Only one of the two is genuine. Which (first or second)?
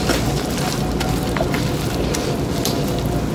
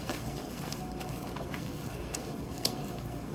first